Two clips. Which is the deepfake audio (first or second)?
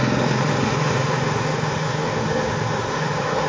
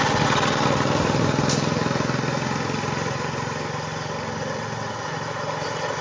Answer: first